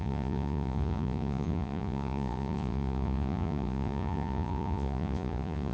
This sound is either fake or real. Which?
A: fake